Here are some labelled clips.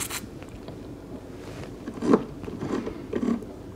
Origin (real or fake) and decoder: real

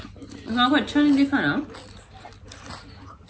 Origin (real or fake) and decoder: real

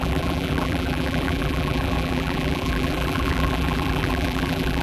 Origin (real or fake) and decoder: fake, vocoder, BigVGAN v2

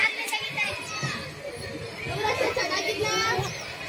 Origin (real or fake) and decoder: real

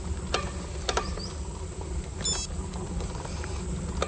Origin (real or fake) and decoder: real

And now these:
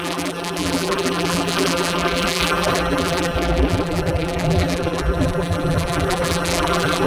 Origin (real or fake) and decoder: fake, vocoder, BigVGAN v2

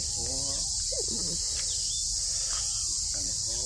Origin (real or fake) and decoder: real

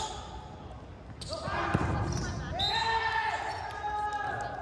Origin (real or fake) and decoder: real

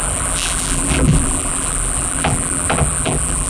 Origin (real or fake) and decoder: fake, vocoder, BigVGAN v2